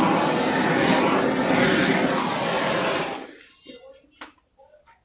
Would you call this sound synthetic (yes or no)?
no